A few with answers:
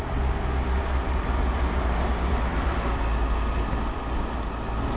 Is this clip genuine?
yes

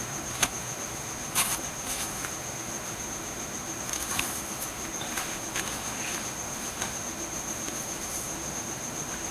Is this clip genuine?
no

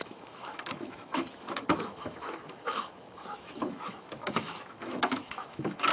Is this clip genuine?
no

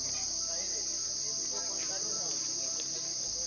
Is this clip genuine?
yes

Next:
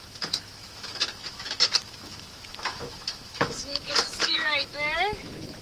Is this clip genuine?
no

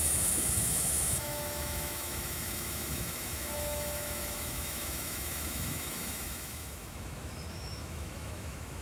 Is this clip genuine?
no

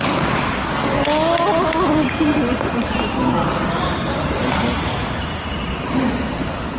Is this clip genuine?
yes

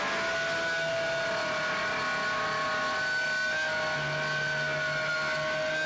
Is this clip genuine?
yes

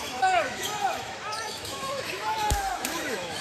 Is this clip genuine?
no